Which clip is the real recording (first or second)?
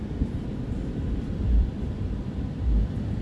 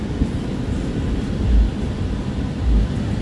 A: second